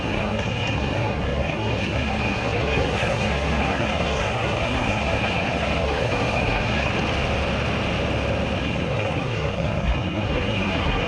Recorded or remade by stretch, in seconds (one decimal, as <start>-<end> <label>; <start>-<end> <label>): 0.0-6.9 remade; 6.9-8.6 recorded; 8.6-11.1 remade